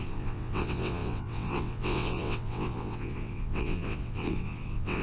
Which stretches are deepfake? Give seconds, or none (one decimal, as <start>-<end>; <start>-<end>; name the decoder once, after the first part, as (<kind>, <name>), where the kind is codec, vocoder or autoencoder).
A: 0.0-5.0 (vocoder, WaveNeXt)